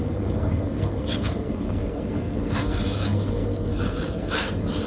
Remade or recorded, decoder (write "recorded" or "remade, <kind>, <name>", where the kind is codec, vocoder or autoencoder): remade, codec, SNAC